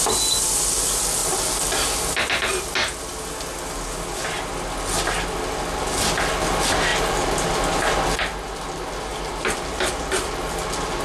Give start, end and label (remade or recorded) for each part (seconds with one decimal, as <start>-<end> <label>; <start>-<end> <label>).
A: 0.0-9.1 recorded; 9.1-9.9 remade; 9.9-11.0 recorded